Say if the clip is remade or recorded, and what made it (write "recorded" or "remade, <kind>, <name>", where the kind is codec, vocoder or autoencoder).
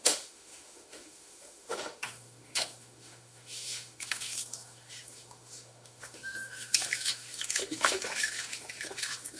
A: remade, autoencoder, DAC-VAE